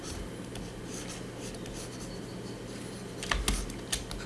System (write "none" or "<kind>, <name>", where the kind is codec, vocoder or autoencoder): none